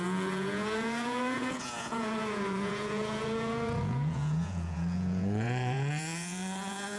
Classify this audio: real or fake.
fake